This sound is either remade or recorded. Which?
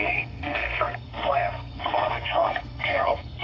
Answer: remade